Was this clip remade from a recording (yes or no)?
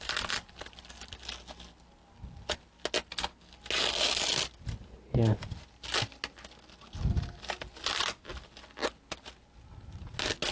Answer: no